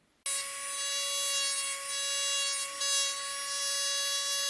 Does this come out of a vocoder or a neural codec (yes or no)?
no